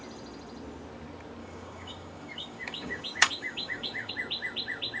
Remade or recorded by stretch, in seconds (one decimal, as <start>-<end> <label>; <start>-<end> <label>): 0.0-1.4 recorded; 1.4-4.1 remade; 4.1-5.0 recorded